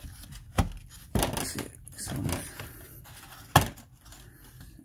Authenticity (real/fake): real